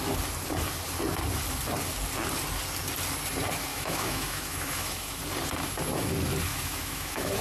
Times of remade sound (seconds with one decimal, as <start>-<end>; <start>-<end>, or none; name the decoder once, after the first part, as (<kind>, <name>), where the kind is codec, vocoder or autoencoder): 3.7-5.2 (autoencoder, DAC-VAE); 6.5-7.4